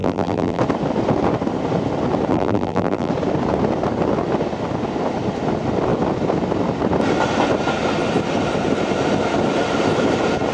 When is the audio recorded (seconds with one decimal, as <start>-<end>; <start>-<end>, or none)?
0.6-2.3; 3.1-10.5